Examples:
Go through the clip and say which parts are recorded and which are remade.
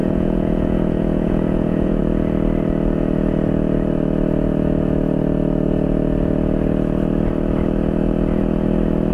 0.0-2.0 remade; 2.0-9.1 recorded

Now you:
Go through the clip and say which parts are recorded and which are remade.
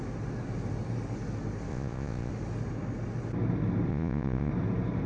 0.0-1.7 recorded; 1.7-2.3 remade; 2.3-3.9 recorded; 3.9-4.5 remade; 4.5-5.1 recorded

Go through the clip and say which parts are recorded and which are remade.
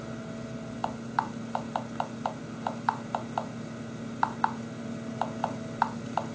0.0-6.3 recorded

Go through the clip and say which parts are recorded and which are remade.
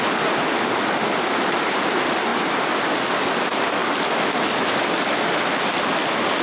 0.0-6.4 recorded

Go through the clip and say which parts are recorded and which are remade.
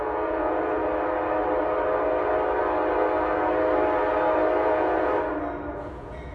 0.0-0.8 remade; 0.8-4.6 recorded; 4.6-5.1 remade; 5.1-5.7 recorded; 5.7-6.3 remade